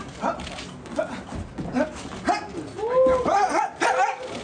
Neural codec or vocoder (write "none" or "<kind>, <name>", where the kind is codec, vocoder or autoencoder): none